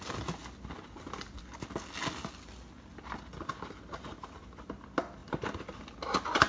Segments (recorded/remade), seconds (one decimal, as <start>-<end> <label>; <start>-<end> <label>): 0.0-5.2 recorded; 5.2-5.8 remade; 5.8-6.5 recorded